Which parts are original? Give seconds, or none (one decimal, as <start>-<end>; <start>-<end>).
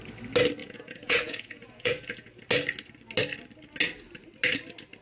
0.0-0.6; 2.4-5.0